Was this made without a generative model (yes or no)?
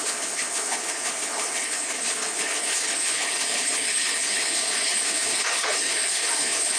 no